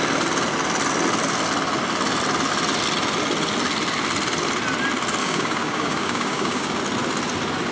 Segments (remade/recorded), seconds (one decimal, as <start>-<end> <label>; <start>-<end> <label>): 0.0-5.2 recorded; 5.2-6.8 remade; 6.8-7.7 recorded